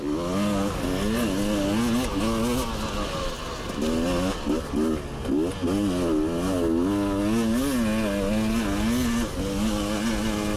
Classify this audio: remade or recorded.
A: recorded